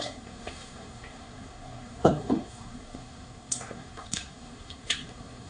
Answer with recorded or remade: remade